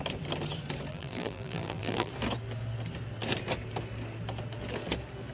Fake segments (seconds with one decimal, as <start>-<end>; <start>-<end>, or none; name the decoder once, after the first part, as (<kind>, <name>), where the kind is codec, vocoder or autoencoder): 0.9-2.1 (vocoder, BigVGAN v2)